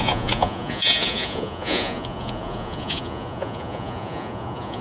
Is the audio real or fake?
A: fake